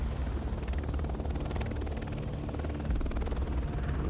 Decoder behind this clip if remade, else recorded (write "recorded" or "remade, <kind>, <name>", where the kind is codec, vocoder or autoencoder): recorded